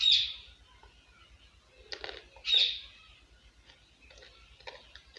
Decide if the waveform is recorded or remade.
recorded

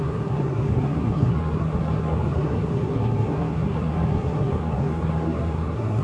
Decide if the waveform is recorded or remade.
remade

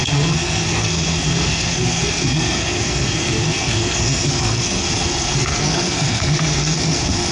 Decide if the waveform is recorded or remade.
remade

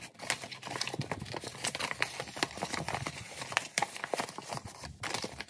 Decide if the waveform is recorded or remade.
recorded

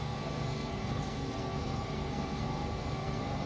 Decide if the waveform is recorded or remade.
remade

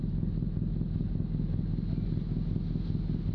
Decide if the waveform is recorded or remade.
recorded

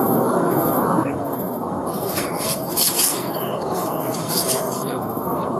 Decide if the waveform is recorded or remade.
remade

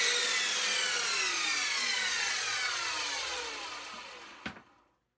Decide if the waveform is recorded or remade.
recorded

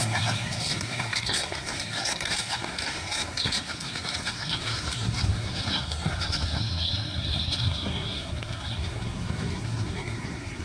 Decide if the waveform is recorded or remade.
remade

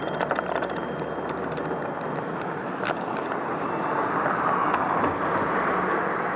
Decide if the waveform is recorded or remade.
recorded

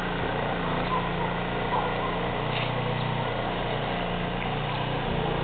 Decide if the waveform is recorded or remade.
recorded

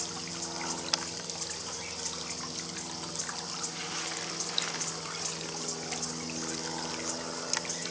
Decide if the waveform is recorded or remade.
recorded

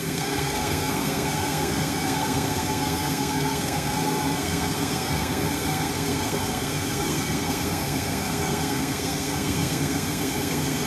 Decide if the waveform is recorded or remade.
remade